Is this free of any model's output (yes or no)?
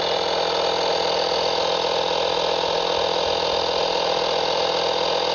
yes